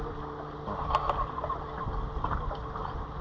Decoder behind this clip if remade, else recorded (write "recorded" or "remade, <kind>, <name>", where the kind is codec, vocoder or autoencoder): recorded